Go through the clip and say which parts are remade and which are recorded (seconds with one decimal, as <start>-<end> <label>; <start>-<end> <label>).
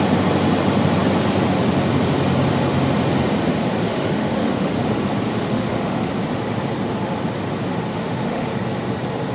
0.0-3.9 recorded; 3.9-4.7 remade; 4.7-5.3 recorded; 5.3-6.1 remade; 6.1-7.9 recorded; 7.9-8.5 remade; 8.5-9.3 recorded